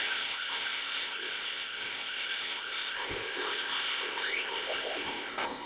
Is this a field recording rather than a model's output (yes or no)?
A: no